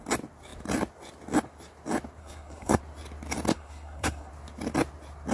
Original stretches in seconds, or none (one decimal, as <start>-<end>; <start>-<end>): 0.0-2.2; 2.8-3.5; 4.3-5.3